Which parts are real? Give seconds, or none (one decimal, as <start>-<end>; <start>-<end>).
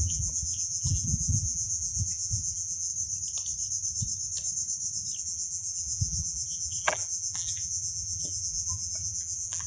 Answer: 2.9-5.2